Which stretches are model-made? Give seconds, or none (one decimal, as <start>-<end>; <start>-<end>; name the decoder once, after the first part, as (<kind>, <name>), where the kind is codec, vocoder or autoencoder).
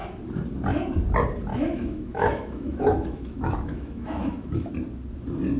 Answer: 1.5-4.7 (autoencoder, DAC-VAE)